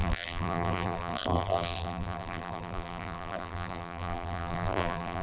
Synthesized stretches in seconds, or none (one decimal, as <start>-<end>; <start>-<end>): 0.0-5.2

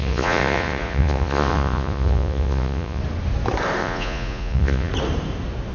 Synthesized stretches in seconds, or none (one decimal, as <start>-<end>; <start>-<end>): 0.0-3.0; 3.8-4.9

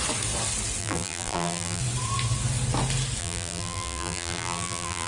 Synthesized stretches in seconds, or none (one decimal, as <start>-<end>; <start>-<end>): 0.8-1.8; 3.2-5.1

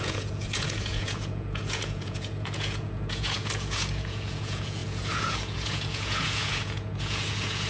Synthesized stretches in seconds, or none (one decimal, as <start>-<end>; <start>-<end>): 0.0-7.7

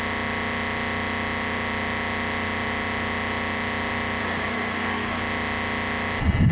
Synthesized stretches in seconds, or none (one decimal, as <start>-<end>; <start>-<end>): 4.2-5.2

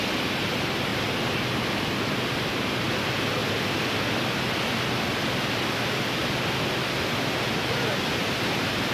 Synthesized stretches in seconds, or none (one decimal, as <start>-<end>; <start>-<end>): none

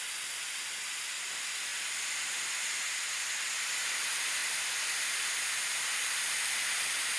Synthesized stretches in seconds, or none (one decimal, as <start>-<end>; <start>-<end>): none